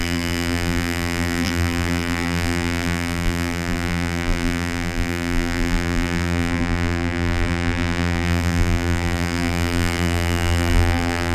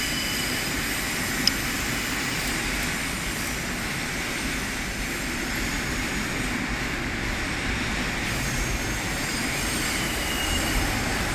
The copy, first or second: first